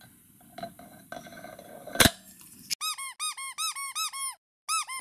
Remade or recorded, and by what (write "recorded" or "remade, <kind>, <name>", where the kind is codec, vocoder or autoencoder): recorded